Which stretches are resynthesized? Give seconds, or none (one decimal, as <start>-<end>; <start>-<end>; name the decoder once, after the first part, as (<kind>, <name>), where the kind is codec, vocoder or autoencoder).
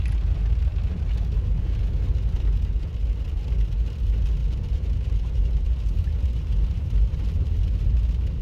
4.4-7.6 (vocoder, BigVGAN v2)